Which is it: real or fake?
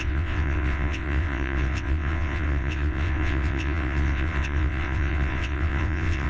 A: fake